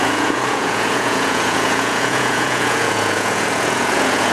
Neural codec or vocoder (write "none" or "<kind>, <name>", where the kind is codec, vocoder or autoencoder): vocoder, Vocos